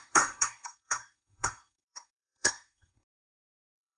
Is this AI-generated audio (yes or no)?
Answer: yes